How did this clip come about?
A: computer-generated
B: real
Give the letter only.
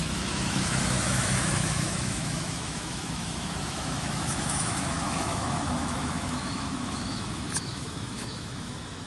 A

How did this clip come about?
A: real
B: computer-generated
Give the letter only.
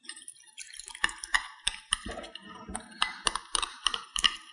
B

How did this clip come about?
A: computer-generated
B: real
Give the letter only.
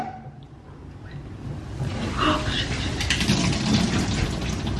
B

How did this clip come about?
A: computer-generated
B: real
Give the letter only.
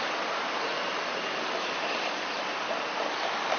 B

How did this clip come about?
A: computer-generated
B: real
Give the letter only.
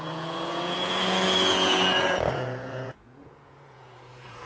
A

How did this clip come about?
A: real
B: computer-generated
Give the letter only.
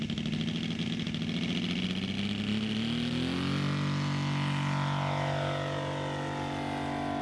A